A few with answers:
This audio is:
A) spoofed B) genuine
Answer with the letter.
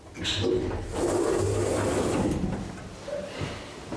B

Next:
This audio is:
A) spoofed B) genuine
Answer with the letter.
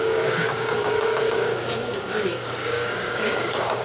A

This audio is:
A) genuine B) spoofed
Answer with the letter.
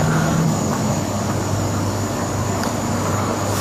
B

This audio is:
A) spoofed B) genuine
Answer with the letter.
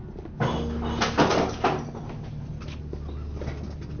B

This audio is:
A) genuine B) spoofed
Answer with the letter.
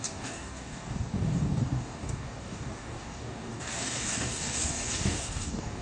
B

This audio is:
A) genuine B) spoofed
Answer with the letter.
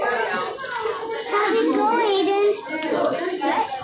A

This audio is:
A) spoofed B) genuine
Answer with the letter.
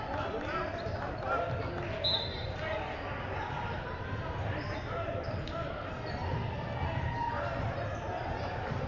B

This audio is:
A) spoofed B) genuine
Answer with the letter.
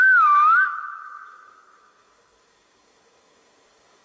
A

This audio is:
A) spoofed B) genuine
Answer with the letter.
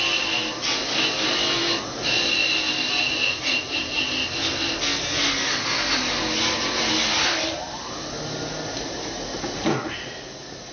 B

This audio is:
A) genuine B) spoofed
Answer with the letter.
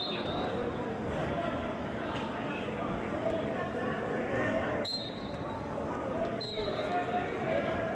B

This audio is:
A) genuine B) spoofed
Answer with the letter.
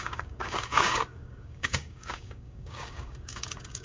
B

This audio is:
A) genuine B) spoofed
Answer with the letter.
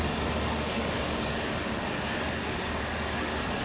B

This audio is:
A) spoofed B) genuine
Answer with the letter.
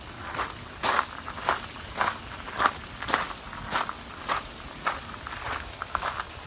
B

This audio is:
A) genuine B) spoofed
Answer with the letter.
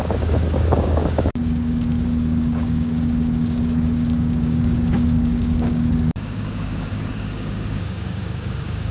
B